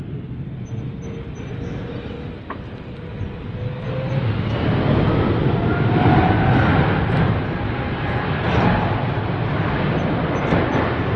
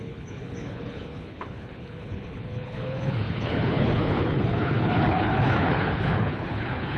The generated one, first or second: second